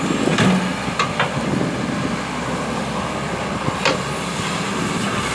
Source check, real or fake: real